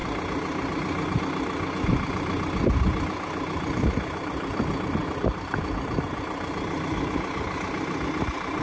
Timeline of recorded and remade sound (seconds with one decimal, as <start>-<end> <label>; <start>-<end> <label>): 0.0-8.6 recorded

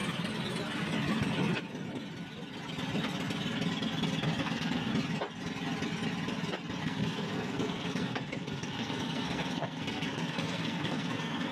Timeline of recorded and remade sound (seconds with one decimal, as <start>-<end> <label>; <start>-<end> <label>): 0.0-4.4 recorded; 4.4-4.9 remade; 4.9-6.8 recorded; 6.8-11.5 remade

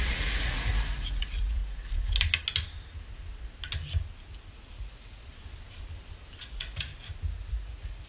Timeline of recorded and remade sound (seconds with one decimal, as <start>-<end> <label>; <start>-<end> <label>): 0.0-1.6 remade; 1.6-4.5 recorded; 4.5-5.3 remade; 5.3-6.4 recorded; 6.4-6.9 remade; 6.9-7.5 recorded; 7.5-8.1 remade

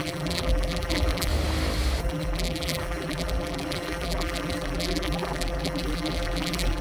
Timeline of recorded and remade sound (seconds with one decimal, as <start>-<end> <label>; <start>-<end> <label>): 0.0-1.3 remade; 1.3-2.0 recorded; 2.0-6.8 remade

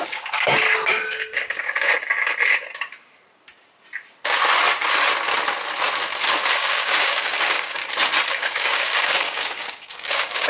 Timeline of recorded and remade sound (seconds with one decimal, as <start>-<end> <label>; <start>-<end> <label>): 0.0-1.9 remade; 1.9-6.5 recorded; 6.5-7.8 remade; 7.8-8.3 recorded; 8.3-10.5 remade